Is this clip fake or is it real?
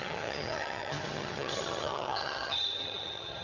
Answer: fake